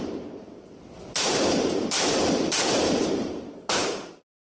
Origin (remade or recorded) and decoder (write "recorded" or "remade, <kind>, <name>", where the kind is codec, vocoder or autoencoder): remade, vocoder, BigVGAN v2